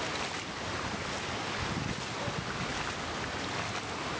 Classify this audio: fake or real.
real